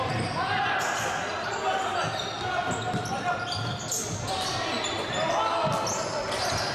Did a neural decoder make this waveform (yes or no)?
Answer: no